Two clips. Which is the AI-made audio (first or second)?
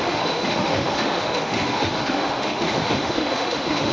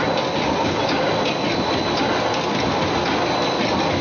first